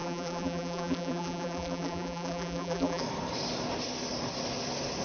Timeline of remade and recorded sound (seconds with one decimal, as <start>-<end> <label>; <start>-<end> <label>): 0.0-3.0 remade; 3.0-5.0 recorded